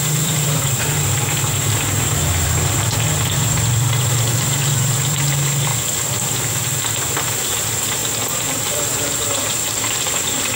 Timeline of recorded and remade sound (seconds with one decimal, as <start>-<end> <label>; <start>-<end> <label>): 0.0-5.7 remade; 5.7-6.5 recorded; 6.5-8.0 remade; 8.0-8.6 recorded; 8.6-10.6 remade